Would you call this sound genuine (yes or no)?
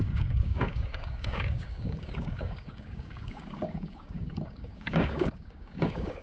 no